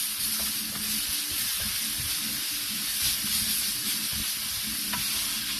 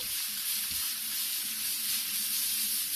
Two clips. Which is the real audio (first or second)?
first